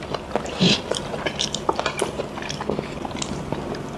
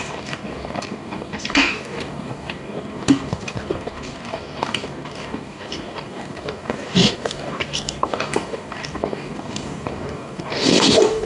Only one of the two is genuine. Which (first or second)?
first